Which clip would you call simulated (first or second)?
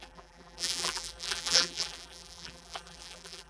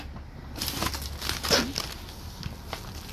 first